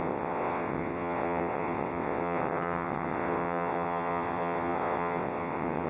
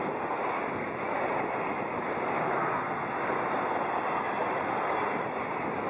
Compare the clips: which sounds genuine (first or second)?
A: second